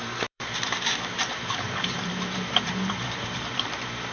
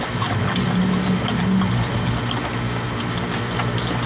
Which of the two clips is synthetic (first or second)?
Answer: first